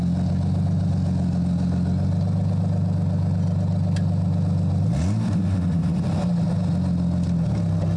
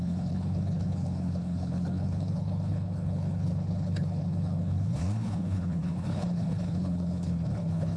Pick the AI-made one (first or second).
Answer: second